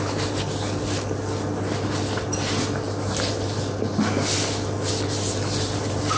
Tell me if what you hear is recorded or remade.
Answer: recorded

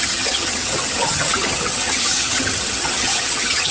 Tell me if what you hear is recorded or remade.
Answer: remade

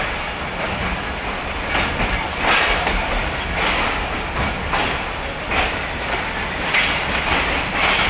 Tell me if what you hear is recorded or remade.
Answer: recorded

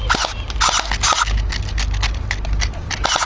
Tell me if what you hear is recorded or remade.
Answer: recorded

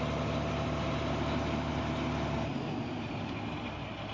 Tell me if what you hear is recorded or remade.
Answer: recorded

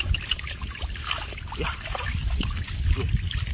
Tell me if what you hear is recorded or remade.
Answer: recorded